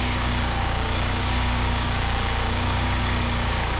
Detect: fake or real fake